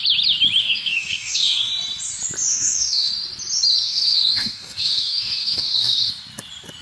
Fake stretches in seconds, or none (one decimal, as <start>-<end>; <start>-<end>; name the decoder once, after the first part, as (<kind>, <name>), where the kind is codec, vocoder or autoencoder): 0.6-1.7 (codec, DAC); 2.5-3.1; 3.8-6.1